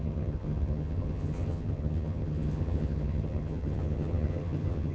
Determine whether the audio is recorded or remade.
remade